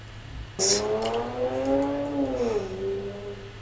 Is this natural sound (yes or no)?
yes